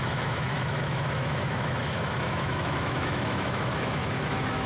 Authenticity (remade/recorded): remade